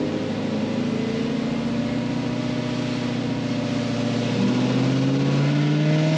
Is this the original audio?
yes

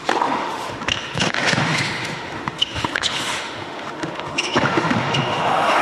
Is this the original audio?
no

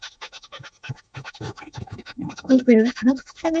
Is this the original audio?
no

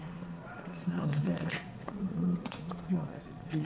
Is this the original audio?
no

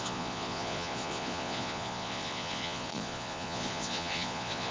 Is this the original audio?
no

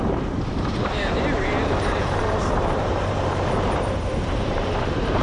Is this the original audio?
no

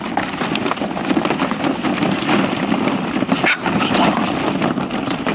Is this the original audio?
yes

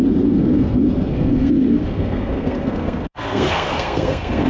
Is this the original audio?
no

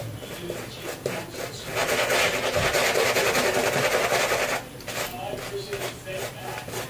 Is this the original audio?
yes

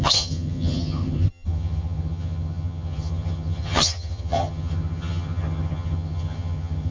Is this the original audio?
no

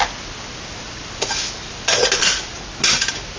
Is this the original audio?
yes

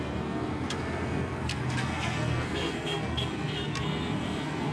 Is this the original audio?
no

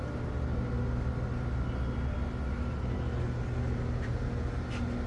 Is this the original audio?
yes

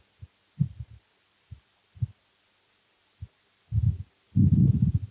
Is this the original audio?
yes